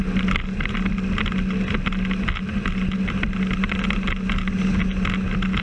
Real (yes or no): yes